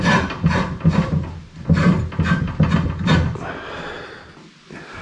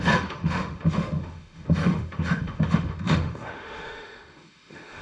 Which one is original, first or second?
first